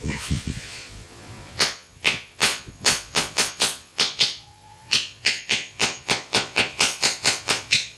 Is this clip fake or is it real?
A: fake